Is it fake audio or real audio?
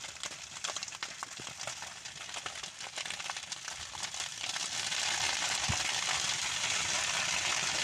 real